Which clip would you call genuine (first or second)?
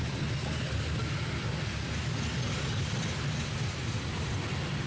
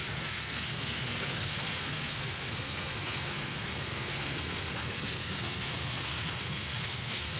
first